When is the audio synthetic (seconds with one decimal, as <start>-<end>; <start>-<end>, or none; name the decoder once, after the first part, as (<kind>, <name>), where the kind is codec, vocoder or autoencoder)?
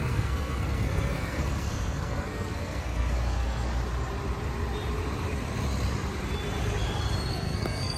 0.0-3.7 (codec, SNAC); 7.3-8.0